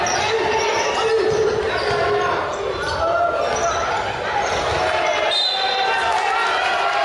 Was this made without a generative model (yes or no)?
yes